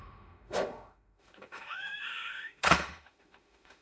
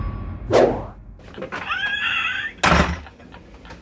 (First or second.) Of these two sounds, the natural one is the second